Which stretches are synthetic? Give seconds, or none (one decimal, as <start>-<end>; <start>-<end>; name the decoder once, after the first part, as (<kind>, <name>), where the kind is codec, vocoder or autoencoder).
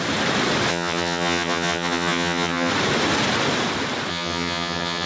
0.7-2.7 (vocoder, HiFi-GAN); 4.1-5.1